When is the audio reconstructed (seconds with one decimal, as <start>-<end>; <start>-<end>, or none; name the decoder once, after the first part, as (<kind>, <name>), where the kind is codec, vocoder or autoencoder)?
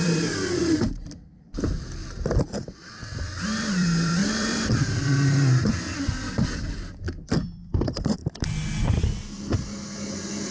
0.0-8.2 (vocoder, BigVGAN v2)